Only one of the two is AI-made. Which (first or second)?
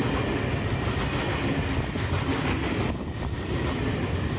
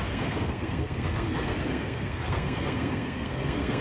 second